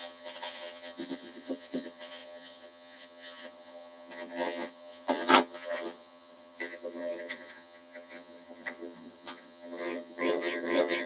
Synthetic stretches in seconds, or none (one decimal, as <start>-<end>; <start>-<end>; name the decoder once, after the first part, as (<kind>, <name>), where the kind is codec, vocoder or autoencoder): 0.0-11.1 (vocoder, HiFi-GAN)